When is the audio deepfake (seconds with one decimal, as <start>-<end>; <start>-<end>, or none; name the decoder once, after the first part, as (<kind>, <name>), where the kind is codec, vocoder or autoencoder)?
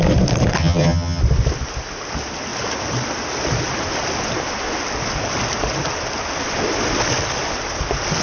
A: 0.6-1.2 (vocoder, HiFi-GAN)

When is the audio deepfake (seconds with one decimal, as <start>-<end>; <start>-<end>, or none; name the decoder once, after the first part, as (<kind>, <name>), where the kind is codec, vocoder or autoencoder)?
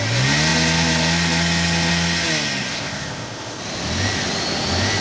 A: 2.7-3.6 (codec, ZipCodec)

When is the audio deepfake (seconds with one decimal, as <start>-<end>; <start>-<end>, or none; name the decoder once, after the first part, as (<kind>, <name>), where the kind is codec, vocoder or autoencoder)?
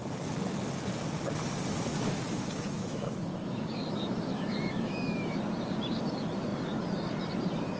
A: 1.9-5.4 (autoencoder, DAC-VAE)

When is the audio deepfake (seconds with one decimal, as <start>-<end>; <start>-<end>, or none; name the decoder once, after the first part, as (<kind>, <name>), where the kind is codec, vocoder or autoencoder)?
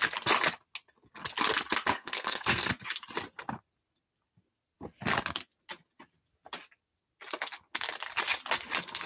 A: 1.9-2.7 (codec, SNAC)